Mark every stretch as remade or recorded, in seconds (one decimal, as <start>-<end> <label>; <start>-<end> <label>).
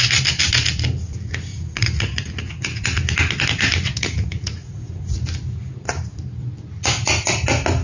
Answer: 0.0-1.5 recorded; 1.5-2.5 remade; 2.5-3.9 recorded; 3.9-5.1 remade; 5.1-7.8 recorded